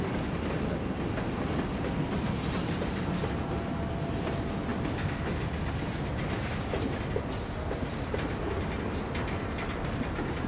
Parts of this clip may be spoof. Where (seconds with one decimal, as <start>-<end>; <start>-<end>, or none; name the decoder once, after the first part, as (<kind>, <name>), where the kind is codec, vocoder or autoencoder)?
none